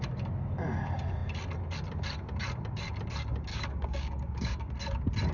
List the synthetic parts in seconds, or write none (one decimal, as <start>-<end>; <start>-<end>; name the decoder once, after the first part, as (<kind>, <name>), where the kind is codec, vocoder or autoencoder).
3.5-4.7 (codec, DAC)